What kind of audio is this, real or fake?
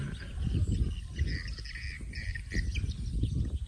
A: real